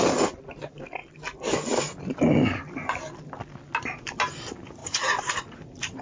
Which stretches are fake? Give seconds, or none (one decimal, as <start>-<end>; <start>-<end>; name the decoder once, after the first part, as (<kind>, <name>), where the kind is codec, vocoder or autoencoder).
4.8-6.0 (vocoder, BigVGAN v2)